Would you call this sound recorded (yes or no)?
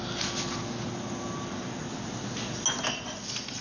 yes